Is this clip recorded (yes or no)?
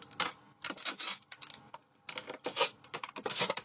yes